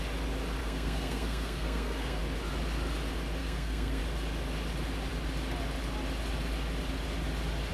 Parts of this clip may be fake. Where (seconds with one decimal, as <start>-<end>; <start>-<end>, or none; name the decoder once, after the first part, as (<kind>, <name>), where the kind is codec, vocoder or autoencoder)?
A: 0.6-2.2 (codec, SNAC); 3.4-4.0